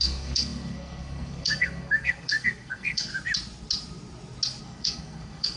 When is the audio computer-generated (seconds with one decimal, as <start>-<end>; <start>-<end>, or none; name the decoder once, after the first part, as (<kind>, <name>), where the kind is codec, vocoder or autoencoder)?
0.0-3.1 (codec, SNAC); 4.6-5.6